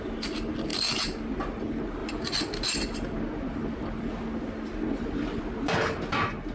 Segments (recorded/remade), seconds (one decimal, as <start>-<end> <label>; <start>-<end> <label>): 0.0-6.5 recorded